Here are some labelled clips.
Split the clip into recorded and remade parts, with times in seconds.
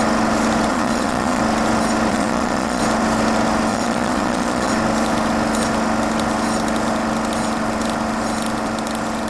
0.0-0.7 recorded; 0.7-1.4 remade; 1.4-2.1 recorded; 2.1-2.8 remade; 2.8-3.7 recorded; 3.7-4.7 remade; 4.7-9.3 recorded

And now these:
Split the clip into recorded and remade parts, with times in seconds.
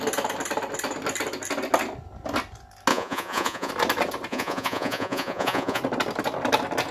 0.0-2.9 recorded; 2.9-3.7 remade; 3.7-4.3 recorded; 4.3-5.8 remade; 5.8-6.9 recorded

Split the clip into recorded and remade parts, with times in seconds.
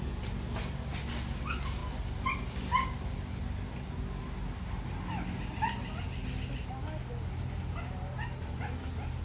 0.0-9.2 recorded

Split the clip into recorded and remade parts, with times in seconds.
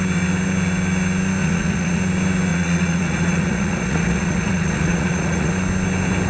0.0-1.4 recorded; 1.4-2.0 remade; 2.0-2.5 recorded; 2.5-5.5 remade; 5.5-6.3 recorded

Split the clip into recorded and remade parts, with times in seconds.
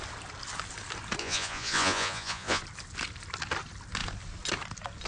0.0-1.2 recorded; 1.2-2.6 remade; 2.6-5.1 recorded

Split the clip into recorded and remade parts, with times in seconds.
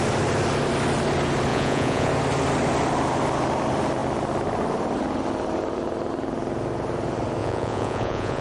0.0-1.5 recorded; 1.5-2.1 remade; 2.1-7.4 recorded; 7.4-8.4 remade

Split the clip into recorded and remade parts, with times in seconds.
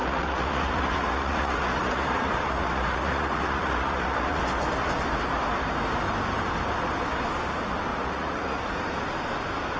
0.0-4.4 remade; 4.4-7.9 recorded; 7.9-8.8 remade; 8.8-9.8 recorded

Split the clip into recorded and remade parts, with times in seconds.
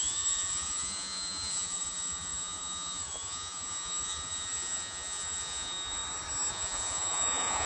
0.0-6.0 remade; 6.0-6.5 recorded; 6.5-7.7 remade